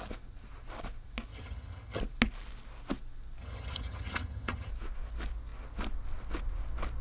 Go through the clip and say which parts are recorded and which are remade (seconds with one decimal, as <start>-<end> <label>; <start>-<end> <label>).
0.0-1.3 recorded; 1.3-2.0 remade; 2.0-3.4 recorded; 3.4-4.7 remade; 4.7-7.0 recorded

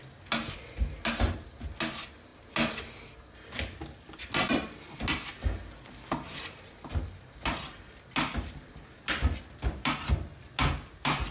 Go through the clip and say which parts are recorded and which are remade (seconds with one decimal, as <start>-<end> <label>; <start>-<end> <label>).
0.0-11.3 recorded

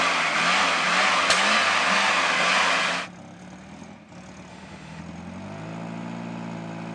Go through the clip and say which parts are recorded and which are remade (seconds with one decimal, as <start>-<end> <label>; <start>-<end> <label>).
0.0-4.5 recorded; 4.5-5.0 remade; 5.0-6.9 recorded

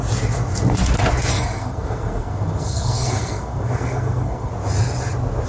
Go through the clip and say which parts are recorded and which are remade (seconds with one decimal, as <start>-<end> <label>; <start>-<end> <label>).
0.0-1.3 recorded; 1.3-4.5 remade; 4.5-5.5 recorded

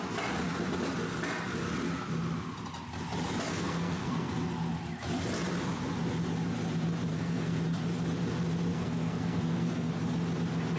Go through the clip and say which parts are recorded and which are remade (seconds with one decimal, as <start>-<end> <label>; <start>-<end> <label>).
0.0-3.5 recorded; 3.5-4.3 remade; 4.3-7.1 recorded; 7.1-7.6 remade; 7.6-8.7 recorded; 8.7-9.9 remade; 9.9-10.8 recorded

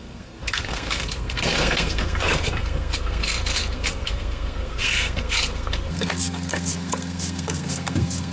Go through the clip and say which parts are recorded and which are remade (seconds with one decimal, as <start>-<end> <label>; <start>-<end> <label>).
0.0-8.3 remade

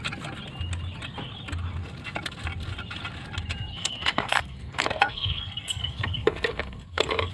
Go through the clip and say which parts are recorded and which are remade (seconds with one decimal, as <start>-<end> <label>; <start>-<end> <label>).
0.0-3.7 recorded; 3.7-7.3 remade